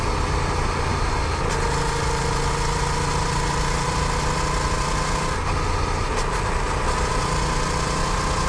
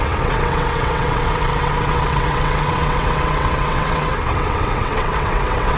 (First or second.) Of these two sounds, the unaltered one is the first